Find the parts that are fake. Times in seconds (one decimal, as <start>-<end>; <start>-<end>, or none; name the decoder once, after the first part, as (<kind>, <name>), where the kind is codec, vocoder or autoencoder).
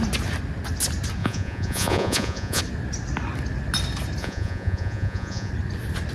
1.2-2.6 (vocoder, Vocos); 4.2-5.5